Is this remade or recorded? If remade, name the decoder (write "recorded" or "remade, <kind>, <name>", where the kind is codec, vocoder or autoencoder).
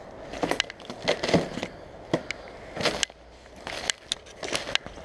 recorded